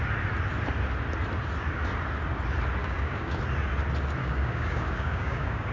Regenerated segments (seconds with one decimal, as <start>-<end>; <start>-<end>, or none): 2.8-3.4; 4.2-5.7